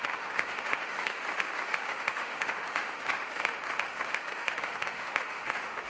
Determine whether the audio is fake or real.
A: fake